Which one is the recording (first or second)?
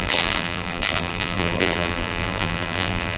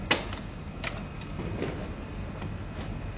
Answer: second